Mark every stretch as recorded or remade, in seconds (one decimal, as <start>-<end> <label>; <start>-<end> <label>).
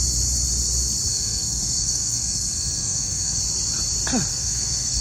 0.0-1.1 recorded; 1.1-3.4 remade; 3.4-4.3 recorded; 4.3-5.0 remade